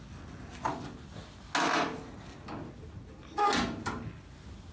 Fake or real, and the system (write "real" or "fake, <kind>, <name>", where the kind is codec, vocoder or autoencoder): real